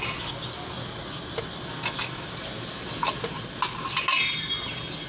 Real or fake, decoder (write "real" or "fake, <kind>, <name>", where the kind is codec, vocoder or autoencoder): real